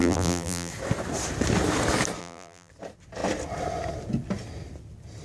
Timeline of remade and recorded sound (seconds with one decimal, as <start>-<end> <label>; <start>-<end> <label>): 0.0-0.7 remade; 0.7-2.2 recorded; 2.2-2.7 remade; 2.7-5.2 recorded